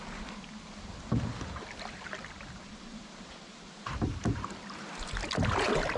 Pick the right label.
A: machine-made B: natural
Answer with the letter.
A